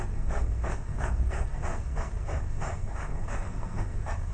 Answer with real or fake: fake